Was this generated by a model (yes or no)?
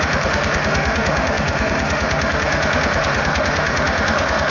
yes